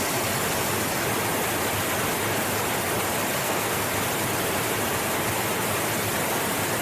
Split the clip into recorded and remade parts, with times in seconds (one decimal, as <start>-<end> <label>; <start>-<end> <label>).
0.0-3.4 recorded; 3.4-3.9 remade; 3.9-6.8 recorded